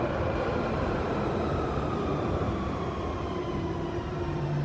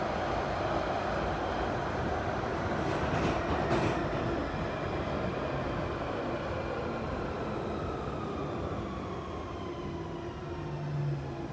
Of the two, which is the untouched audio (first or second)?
second